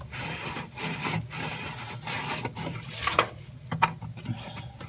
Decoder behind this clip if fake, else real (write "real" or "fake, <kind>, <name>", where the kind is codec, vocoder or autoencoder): real